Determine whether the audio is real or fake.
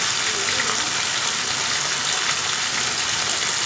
real